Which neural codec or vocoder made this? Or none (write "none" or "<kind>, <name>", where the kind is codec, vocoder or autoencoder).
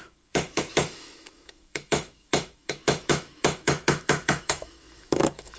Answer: autoencoder, DAC-VAE